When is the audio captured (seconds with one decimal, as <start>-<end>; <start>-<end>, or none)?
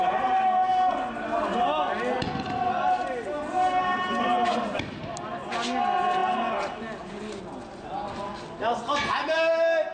0.0-9.9